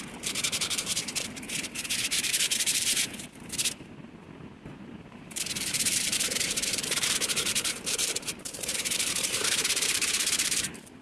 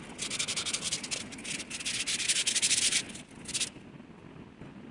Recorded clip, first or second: second